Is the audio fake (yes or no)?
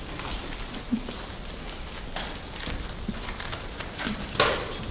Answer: no